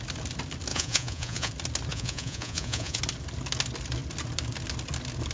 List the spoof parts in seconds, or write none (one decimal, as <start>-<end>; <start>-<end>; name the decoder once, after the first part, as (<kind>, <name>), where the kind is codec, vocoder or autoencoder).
0.7-1.5 (vocoder, Vocos); 1.9-3.0